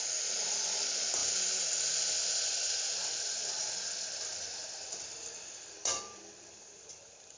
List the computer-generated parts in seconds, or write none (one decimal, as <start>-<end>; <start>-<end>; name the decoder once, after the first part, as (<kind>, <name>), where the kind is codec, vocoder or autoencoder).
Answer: 3.0-3.6 (vocoder, BigVGAN v2); 4.5-6.9